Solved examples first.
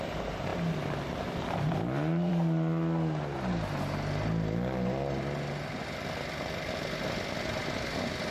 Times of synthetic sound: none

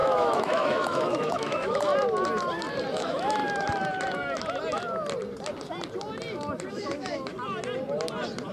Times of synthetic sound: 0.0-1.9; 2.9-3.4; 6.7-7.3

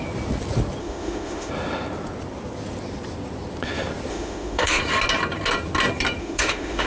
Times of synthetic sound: 0.8-1.5; 4.1-4.8; 6.2-6.9